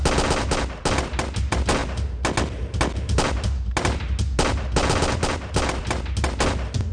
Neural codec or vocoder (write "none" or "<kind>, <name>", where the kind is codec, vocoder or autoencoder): none